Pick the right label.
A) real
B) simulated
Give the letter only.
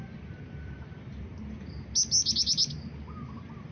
A